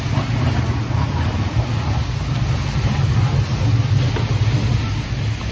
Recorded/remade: recorded